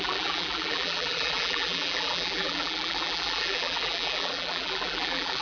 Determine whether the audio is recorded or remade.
remade